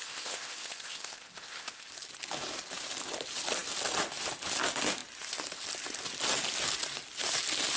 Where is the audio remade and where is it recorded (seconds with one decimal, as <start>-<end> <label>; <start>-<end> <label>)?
0.0-1.9 remade; 1.9-7.8 recorded